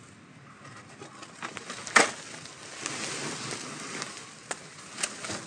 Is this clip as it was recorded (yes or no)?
yes